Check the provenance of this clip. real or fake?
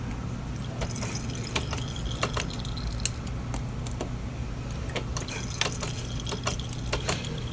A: real